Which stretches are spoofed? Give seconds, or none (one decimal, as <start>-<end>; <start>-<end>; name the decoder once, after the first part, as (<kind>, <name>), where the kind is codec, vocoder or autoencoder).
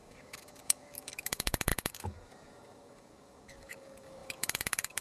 0.0-5.0 (codec, DAC)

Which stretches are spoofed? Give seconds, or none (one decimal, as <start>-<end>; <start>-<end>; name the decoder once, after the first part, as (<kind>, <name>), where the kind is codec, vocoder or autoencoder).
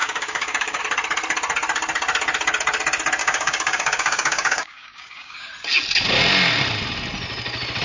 0.0-0.8 (codec, DAC); 3.2-5.5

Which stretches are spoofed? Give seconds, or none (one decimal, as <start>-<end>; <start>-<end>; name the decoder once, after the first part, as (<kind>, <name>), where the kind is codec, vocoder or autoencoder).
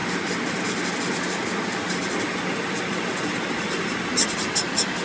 none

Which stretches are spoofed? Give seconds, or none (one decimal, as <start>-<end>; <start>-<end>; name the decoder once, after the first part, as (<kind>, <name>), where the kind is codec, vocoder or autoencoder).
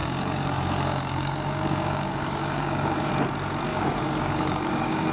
0.0-3.1 (codec, DAC); 3.7-5.1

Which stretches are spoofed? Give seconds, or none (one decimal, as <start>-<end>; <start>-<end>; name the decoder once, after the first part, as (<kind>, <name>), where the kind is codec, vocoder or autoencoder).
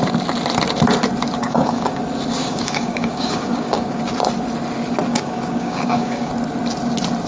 1.4-2.0 (codec, DAC); 2.4-4.0; 5.1-6.3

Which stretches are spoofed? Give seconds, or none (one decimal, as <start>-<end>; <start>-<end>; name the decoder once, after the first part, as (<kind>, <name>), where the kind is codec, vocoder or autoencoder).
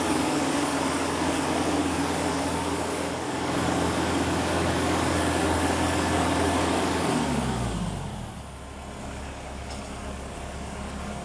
0.0-8.1 (codec, DAC); 9.0-11.2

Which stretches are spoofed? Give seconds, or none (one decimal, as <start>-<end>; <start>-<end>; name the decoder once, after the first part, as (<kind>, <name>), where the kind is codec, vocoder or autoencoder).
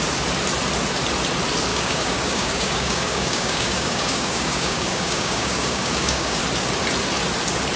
1.7-6.4 (codec, DAC)